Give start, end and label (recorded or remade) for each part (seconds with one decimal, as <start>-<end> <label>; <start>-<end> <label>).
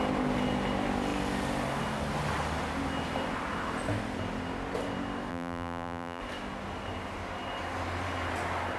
0.0-5.3 recorded; 5.3-6.2 remade; 6.2-8.8 recorded